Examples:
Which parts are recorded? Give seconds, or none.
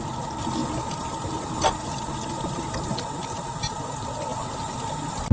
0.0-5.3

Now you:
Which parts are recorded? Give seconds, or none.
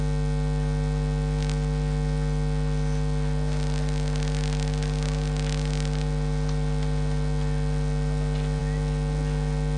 0.0-9.8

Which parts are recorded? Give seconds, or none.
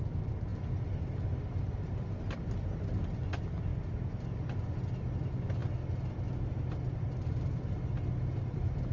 0.0-8.9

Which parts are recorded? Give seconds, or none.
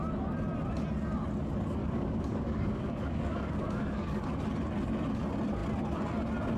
0.0-1.8; 4.2-6.6